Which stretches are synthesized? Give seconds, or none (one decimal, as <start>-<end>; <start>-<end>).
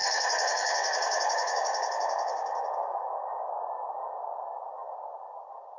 0.0-3.5